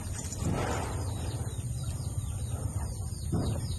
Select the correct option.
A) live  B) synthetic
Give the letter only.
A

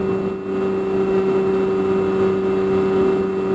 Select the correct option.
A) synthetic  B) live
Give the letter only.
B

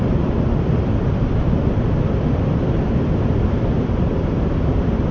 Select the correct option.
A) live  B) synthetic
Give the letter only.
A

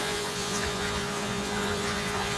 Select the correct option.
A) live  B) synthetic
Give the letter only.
B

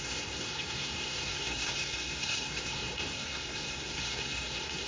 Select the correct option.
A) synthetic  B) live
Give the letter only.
A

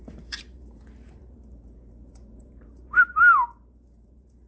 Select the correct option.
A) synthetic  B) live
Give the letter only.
A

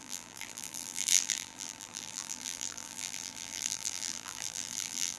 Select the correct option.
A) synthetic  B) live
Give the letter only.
A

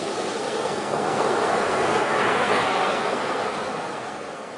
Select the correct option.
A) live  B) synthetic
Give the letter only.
B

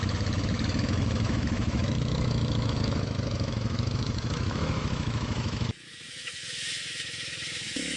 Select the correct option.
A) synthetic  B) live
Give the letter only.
A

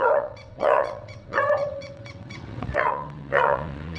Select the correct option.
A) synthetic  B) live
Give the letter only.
A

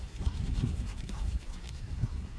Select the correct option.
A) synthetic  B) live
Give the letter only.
A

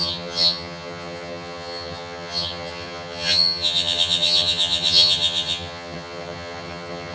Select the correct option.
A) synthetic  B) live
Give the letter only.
A